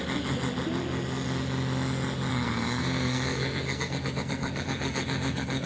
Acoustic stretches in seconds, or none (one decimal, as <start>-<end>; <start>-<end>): 0.0-2.3